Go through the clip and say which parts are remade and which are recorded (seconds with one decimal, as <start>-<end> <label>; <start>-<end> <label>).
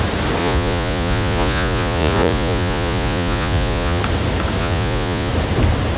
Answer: 0.0-0.4 recorded; 0.4-4.0 remade; 4.0-4.6 recorded; 4.6-5.3 remade; 5.3-6.0 recorded